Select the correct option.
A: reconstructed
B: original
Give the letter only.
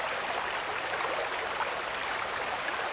B